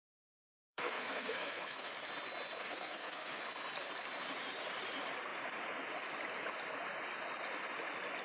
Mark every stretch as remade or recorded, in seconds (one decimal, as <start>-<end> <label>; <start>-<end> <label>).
0.0-1.9 remade; 1.9-2.6 recorded; 2.6-3.4 remade; 3.4-8.2 recorded

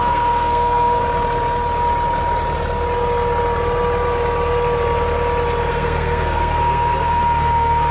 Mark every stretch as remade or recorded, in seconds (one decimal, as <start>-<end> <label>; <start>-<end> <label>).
0.0-1.0 remade; 1.0-5.7 recorded; 5.7-7.9 remade

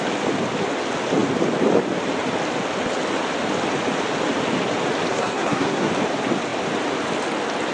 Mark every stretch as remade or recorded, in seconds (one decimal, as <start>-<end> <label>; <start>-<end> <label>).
0.0-5.1 recorded; 5.1-5.9 remade; 5.9-7.7 recorded